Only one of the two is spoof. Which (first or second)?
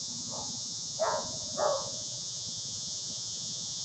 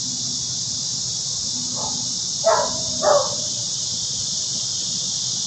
first